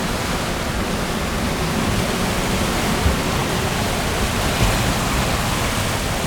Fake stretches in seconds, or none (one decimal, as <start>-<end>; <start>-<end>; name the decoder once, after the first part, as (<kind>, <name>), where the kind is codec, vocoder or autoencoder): none